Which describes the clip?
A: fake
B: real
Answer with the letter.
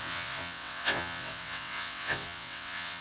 A